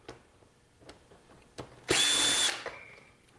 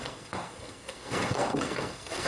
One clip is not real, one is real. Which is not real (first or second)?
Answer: second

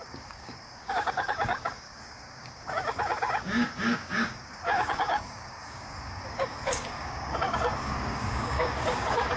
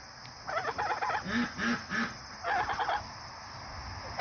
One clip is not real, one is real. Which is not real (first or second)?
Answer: first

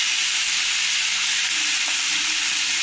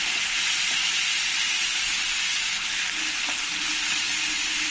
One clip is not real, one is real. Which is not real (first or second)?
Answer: first